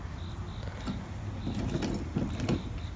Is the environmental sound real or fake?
real